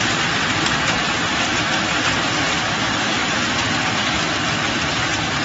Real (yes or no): no